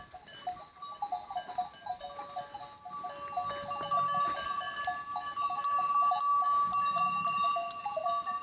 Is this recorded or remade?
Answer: recorded